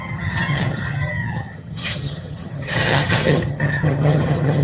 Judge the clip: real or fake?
fake